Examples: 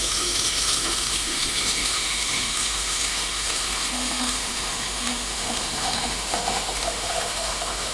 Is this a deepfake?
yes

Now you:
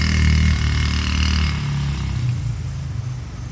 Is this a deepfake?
no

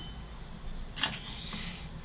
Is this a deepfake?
no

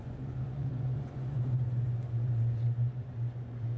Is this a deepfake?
yes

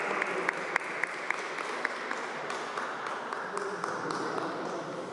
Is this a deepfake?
no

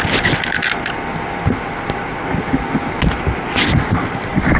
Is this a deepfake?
no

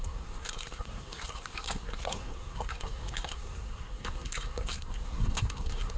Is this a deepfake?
yes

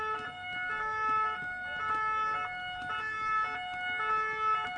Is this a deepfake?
no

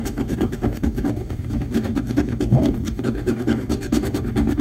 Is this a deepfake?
yes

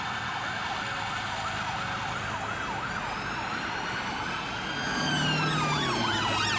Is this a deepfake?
no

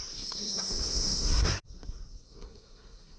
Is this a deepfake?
yes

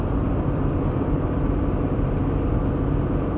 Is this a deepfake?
no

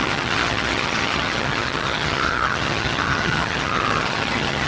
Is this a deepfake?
yes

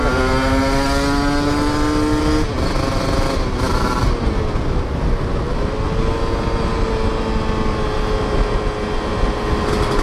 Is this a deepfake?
no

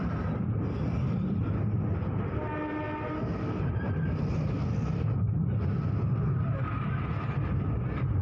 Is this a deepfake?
no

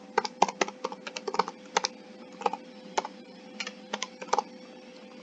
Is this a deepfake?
no